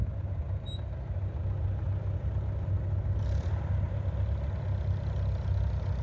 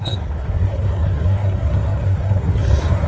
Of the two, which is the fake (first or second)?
second